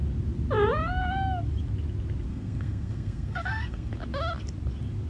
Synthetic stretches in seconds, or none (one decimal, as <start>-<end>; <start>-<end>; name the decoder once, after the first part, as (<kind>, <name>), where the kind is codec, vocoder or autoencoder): 2.3-3.9 (codec, SNAC)